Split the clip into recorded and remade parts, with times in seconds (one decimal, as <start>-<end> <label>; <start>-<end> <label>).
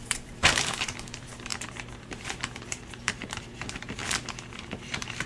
0.0-4.0 remade; 4.0-4.5 recorded; 4.5-5.3 remade